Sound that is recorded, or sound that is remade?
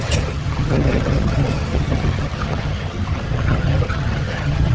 remade